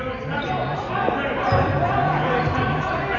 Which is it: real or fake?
real